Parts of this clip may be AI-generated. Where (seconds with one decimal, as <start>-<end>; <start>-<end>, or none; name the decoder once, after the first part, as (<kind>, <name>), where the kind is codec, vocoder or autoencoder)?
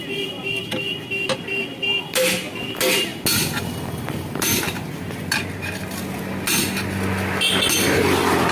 none